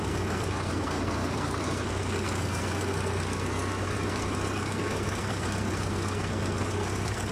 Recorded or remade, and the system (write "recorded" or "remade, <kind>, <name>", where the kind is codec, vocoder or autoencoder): remade, codec, SNAC